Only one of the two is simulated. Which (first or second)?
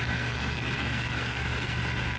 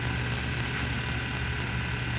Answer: first